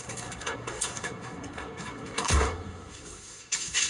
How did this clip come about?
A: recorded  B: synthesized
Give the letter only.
B